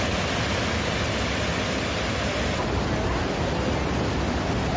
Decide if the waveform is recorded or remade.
recorded